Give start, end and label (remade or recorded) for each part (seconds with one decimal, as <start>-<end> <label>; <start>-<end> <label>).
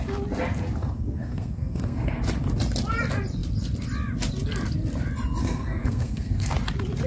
0.0-0.8 recorded; 0.8-2.2 remade; 2.2-5.4 recorded; 5.4-6.5 remade; 6.5-7.1 recorded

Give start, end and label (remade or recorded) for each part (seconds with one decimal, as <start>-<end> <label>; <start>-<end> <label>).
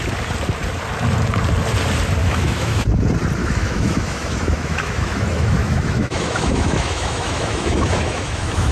0.0-2.2 recorded; 2.2-2.8 remade; 2.8-3.4 recorded; 3.4-8.7 remade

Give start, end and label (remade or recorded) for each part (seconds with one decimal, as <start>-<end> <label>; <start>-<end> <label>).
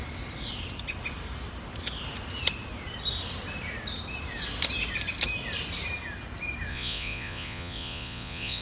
0.0-6.7 recorded; 6.7-8.6 remade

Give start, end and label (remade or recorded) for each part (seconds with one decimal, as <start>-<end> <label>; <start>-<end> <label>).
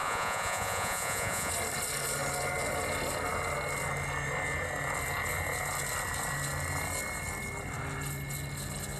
0.0-1.5 remade; 1.5-9.0 recorded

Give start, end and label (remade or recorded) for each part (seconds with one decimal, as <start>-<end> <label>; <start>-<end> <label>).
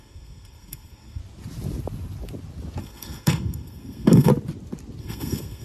0.0-1.2 remade; 1.2-2.8 recorded; 2.8-4.3 remade; 4.3-5.0 recorded; 5.0-5.6 remade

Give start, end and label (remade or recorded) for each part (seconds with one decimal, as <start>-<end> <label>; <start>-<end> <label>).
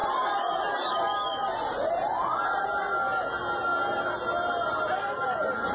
0.0-0.9 remade; 0.9-1.4 recorded; 1.4-2.6 remade; 2.6-5.7 recorded